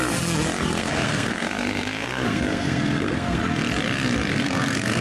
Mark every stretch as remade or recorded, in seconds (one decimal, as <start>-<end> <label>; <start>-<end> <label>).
0.0-0.8 recorded; 0.8-3.4 remade; 3.4-4.3 recorded; 4.3-5.0 remade